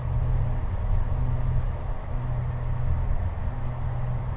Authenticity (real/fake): real